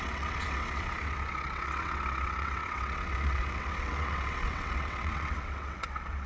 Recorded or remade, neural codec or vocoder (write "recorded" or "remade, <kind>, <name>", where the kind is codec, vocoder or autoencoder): remade, vocoder, WaveNeXt